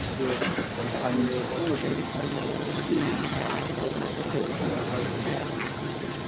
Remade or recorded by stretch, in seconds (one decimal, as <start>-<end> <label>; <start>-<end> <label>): 0.0-1.8 recorded; 1.8-4.5 remade; 4.5-5.3 recorded; 5.3-6.3 remade